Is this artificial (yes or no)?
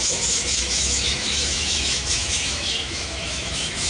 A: yes